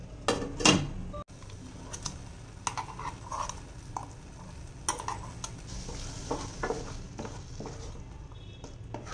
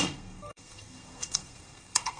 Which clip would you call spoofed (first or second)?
second